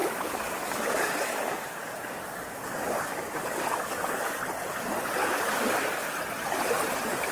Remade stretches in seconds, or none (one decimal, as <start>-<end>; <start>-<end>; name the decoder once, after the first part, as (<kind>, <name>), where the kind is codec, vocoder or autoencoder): 0.0-4.4 (codec, DAC); 5.2-6.1